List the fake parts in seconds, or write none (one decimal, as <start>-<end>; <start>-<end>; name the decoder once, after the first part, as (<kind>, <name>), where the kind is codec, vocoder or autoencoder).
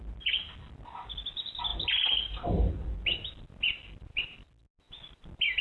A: none